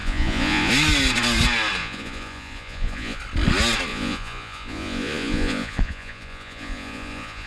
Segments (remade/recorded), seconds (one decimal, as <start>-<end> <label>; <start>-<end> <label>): 0.0-0.7 remade; 0.7-1.8 recorded; 1.8-3.2 remade; 3.2-3.9 recorded; 3.9-7.5 remade